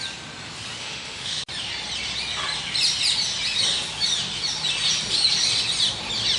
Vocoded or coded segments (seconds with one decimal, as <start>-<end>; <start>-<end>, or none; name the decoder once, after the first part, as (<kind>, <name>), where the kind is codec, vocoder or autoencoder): 0.8-1.4 (autoencoder, DAC-VAE)